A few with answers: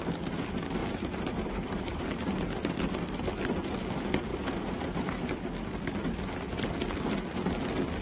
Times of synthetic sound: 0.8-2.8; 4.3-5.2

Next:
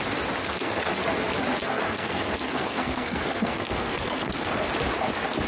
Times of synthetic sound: 0.4-0.9; 1.6-4.7

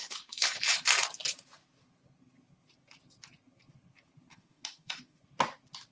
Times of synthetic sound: 0.0-0.6; 4.3-5.2

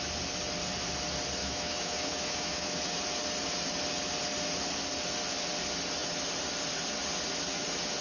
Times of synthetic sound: 1.4-2.8

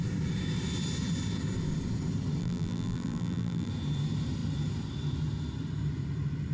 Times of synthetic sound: 2.4-3.7

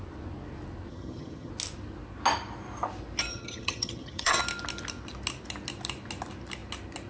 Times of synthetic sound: 0.9-1.5; 3.3-4.4

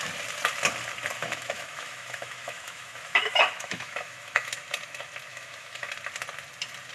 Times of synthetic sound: 1.2-4.5; 5.3-5.9

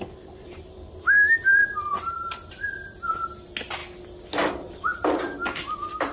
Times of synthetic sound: none